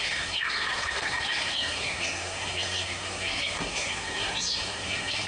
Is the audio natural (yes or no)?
no